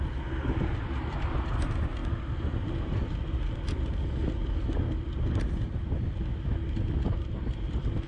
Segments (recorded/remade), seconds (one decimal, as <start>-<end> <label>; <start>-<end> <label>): 0.0-8.1 recorded